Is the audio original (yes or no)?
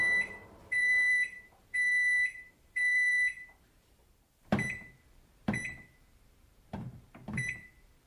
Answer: no